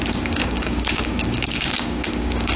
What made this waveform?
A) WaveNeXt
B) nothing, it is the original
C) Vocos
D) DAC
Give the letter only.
D